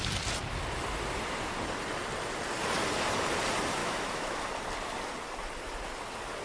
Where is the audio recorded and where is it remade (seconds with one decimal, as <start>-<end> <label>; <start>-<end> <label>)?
0.0-3.8 recorded; 3.8-4.4 remade; 4.4-6.4 recorded